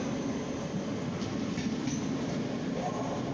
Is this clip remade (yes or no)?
no